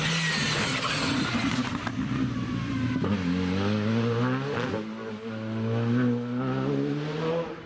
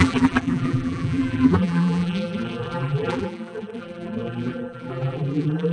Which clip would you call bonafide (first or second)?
first